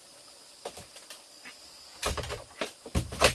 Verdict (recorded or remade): recorded